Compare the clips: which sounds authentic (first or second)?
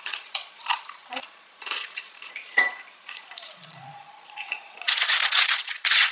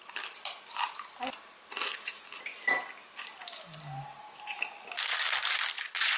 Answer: second